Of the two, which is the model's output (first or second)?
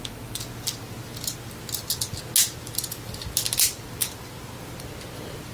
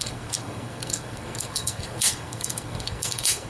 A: second